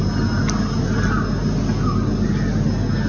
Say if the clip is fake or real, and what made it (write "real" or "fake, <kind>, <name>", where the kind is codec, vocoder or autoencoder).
real